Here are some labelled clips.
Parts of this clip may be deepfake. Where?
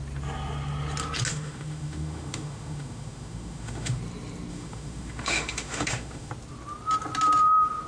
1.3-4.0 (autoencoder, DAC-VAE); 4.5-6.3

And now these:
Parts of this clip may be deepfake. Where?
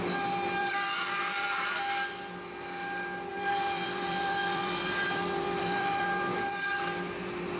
0.6-1.8 (vocoder, BigVGAN v2); 3.3-6.7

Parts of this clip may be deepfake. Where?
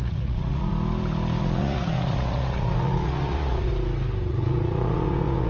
0.0-0.7 (vocoder, Vocos); 1.4-3.7; 4.3-5.5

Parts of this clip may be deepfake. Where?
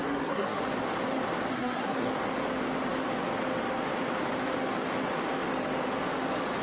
0.0-0.6 (codec, SNAC); 1.5-2.1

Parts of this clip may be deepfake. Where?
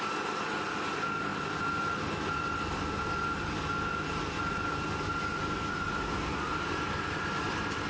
none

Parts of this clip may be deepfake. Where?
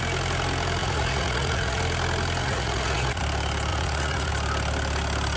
0.8-1.8 (vocoder, Vocos); 2.4-3.2; 3.7-4.3